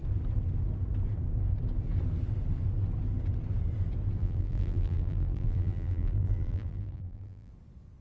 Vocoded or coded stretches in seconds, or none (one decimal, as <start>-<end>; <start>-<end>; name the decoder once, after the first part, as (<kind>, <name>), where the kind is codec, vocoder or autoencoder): 4.2-7.5 (vocoder, BigVGAN v2)